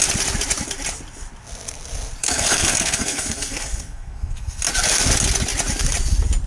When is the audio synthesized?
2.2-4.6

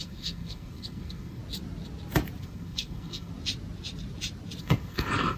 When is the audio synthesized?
0.0-1.4; 2.4-3.3; 4.6-5.4

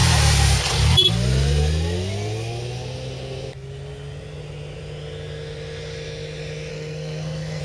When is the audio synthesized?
6.7-7.6

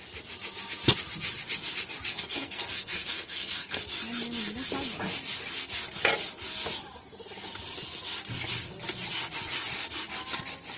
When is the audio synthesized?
2.1-3.8

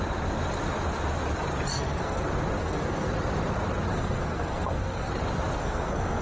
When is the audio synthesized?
1.7-2.2; 2.6-3.1; 3.9-5.1; 5.6-6.2